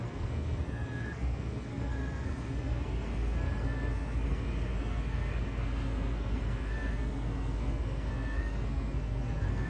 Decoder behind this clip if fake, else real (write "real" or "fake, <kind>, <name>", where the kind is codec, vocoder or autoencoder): fake, codec, SNAC